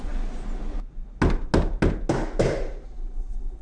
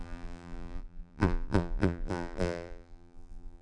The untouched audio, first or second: first